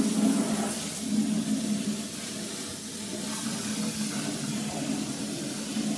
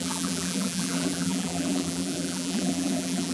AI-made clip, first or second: second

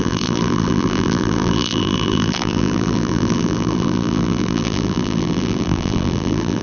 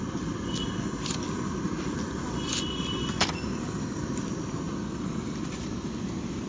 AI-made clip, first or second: first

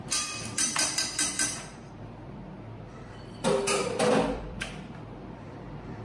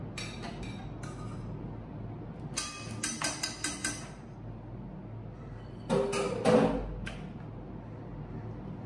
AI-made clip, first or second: first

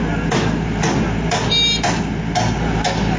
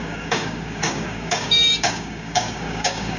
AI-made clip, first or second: second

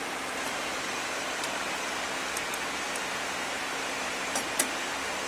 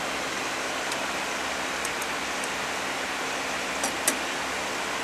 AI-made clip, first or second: first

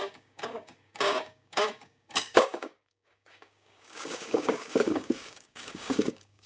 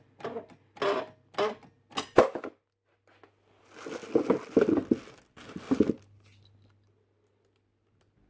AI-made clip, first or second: first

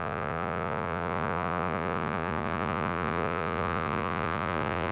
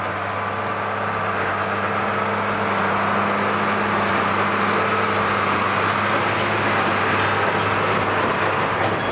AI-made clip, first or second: first